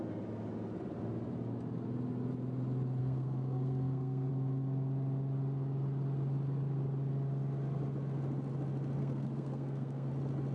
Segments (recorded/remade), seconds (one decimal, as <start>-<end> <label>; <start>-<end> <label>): 0.0-3.0 recorded; 3.0-4.3 remade; 4.3-9.0 recorded; 9.0-10.1 remade; 10.1-10.5 recorded